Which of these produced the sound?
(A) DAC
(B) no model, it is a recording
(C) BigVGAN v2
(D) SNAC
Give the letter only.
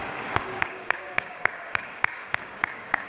A